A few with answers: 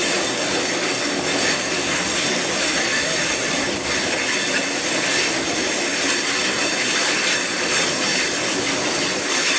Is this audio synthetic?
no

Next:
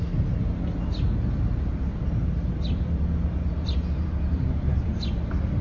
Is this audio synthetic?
no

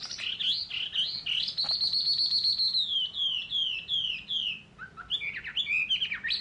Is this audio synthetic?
no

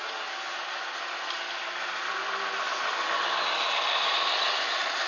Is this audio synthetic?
no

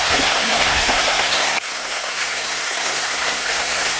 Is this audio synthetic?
yes